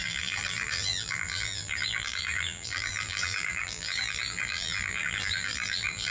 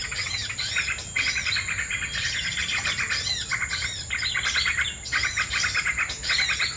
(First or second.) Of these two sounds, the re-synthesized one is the first